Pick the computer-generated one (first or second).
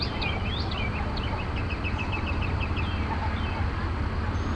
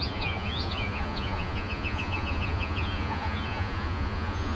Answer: second